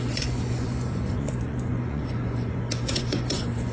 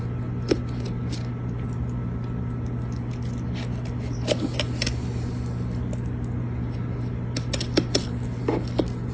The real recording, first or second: second